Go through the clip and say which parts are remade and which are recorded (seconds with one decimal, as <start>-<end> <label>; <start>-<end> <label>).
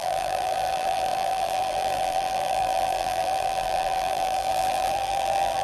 0.0-5.6 remade